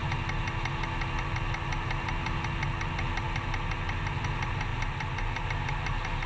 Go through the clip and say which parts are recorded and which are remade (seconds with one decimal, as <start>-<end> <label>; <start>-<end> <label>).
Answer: 0.0-6.3 recorded